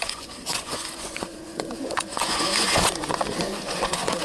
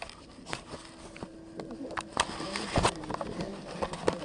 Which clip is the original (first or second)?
second